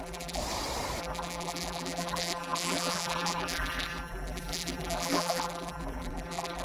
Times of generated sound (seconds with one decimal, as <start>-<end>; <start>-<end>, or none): 0.0-0.4; 1.0-6.6